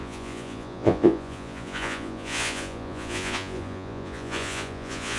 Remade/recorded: remade